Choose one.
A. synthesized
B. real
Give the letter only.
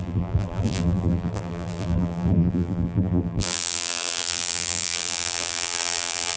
A